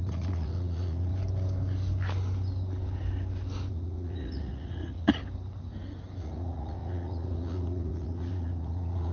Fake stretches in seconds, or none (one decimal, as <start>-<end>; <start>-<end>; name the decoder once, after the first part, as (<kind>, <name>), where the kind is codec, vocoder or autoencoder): 0.0-1.1 (vocoder, Vocos); 3.7-5.2; 6.2-9.1